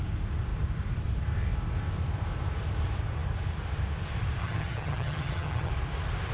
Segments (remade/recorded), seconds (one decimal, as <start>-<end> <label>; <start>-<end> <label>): 0.0-4.4 recorded; 4.4-5.7 remade; 5.7-6.3 recorded